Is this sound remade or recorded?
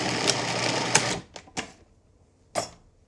recorded